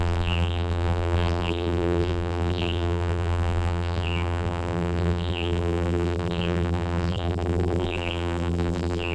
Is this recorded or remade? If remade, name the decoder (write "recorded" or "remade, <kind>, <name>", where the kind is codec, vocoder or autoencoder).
remade, vocoder, BigVGAN v2